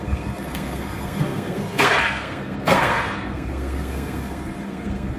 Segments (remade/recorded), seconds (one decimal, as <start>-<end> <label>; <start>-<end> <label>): 0.0-5.2 remade

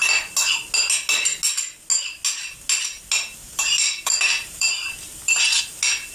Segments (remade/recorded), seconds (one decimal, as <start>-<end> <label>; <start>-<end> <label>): 0.0-3.4 recorded; 3.4-5.6 remade; 5.6-6.1 recorded